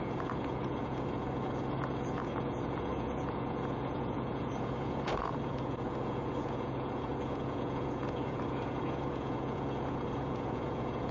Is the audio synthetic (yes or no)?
yes